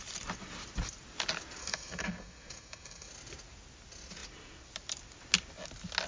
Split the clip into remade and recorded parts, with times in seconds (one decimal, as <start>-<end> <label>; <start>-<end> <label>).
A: 0.0-1.6 recorded; 1.6-3.1 remade; 3.1-6.1 recorded